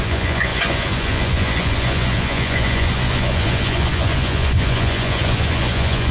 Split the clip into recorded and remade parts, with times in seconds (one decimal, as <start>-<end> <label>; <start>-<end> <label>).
0.0-6.1 remade